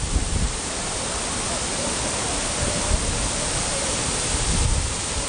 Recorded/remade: remade